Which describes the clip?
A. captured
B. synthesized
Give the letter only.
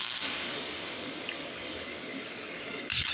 B